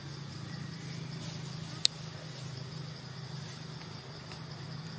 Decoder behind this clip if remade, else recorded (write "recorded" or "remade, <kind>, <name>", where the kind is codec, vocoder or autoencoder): recorded